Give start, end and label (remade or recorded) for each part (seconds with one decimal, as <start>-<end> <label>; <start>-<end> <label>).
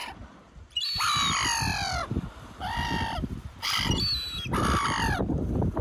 0.0-0.8 remade; 0.8-5.8 recorded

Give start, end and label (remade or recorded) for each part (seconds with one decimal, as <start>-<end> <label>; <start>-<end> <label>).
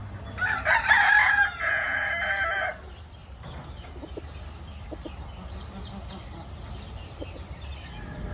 0.0-1.2 recorded; 1.2-2.1 remade; 2.1-8.3 recorded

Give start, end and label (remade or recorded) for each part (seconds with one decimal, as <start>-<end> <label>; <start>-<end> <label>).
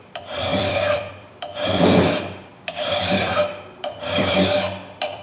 0.0-5.2 remade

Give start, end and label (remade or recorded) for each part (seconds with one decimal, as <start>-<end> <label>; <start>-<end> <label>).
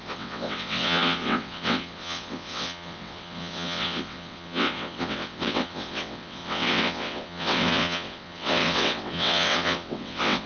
0.0-10.5 remade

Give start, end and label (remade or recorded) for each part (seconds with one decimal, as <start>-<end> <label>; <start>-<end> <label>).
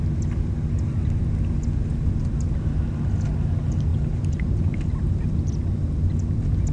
0.0-3.9 recorded; 3.9-5.5 remade; 5.5-6.7 recorded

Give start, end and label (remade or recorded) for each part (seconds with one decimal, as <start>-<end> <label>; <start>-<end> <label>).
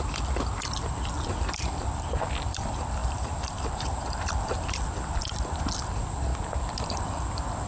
0.0-6.3 remade; 6.3-6.8 recorded; 6.8-7.7 remade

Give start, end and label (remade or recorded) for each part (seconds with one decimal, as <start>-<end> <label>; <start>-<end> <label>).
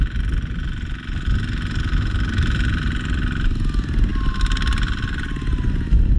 0.0-6.2 recorded